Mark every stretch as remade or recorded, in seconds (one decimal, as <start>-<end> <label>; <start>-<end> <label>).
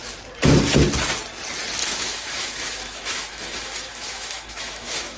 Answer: 0.0-1.8 recorded; 1.8-5.2 remade